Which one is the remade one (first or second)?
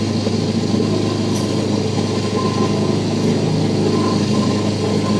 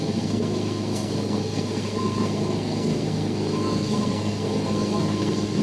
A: second